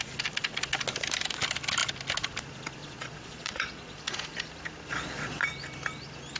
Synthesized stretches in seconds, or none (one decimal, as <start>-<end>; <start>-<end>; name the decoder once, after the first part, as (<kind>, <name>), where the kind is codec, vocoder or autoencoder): 2.8-4.0 (vocoder, Vocos); 4.9-5.4